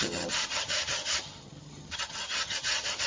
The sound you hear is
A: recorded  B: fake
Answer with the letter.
B